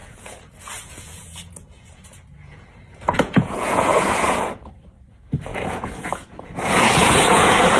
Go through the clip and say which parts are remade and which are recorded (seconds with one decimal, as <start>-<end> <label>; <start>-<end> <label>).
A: 0.0-4.7 remade; 4.7-5.5 recorded; 5.5-7.8 remade